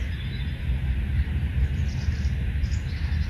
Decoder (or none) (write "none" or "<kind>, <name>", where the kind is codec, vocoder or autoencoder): vocoder, BigVGAN v2